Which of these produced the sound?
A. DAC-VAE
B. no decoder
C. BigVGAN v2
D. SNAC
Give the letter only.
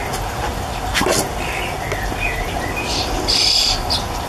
B